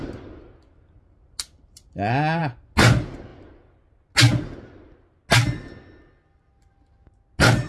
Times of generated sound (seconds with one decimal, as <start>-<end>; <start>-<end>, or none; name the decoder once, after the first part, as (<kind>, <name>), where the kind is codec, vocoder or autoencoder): none